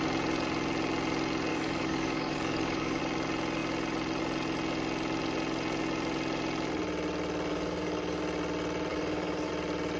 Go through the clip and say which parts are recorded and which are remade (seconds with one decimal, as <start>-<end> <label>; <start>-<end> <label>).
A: 0.0-1.5 recorded; 1.5-3.0 remade; 3.0-7.5 recorded; 7.5-8.2 remade; 8.2-8.9 recorded; 8.9-9.5 remade; 9.5-10.0 recorded